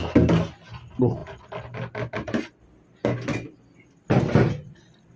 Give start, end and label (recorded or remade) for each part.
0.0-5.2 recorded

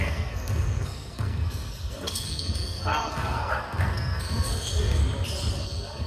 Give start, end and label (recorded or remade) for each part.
0.0-5.0 remade; 5.0-5.5 recorded; 5.5-6.1 remade

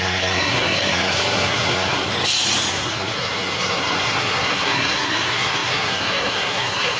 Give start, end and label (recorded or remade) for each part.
0.0-2.1 remade; 2.1-2.7 recorded; 2.7-7.0 remade